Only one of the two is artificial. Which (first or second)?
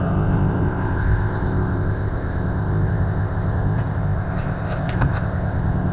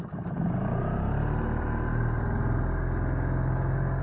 first